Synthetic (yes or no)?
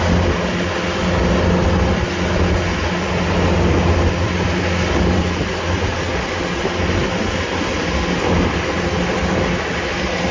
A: no